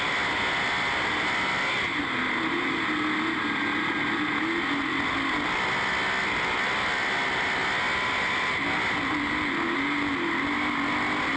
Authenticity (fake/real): real